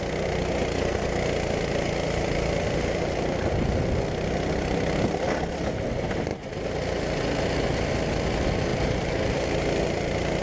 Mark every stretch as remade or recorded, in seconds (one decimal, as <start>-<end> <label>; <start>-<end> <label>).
0.0-0.7 recorded; 0.7-1.2 remade; 1.2-10.4 recorded